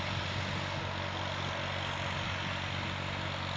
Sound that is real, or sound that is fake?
real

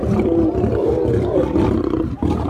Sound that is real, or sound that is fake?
real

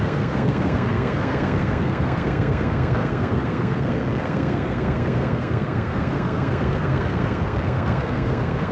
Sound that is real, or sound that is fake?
fake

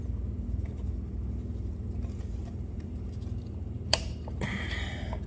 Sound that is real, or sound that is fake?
fake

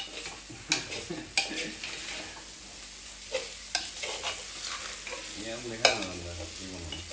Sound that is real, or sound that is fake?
real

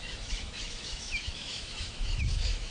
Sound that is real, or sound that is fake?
fake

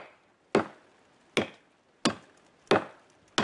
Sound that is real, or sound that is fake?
real